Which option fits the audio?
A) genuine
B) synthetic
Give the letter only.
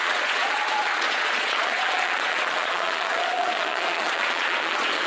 B